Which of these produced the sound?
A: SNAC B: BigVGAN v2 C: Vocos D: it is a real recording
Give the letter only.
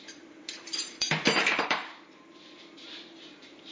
B